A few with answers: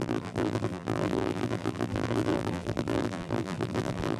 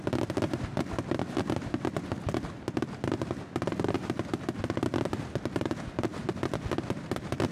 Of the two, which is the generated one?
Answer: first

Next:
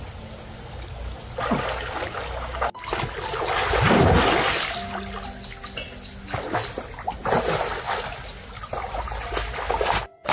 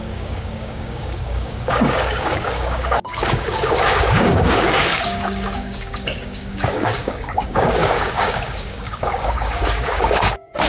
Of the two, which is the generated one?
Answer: second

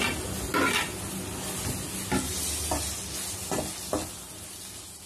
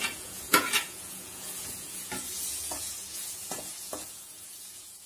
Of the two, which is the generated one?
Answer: second